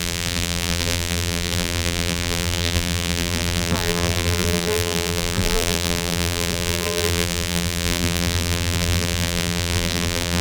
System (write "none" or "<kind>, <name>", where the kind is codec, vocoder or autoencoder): vocoder, BigVGAN v2